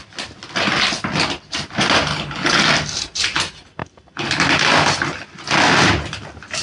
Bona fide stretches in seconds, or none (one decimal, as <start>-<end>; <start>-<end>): 0.0-2.1; 2.6-6.6